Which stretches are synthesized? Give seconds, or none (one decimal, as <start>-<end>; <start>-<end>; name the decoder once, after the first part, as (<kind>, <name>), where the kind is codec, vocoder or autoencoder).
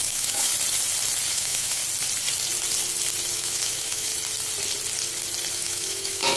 0.0-0.5 (autoencoder, DAC-VAE); 1.3-1.8; 3.3-4.1; 5.5-6.4